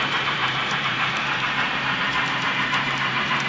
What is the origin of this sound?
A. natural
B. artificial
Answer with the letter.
B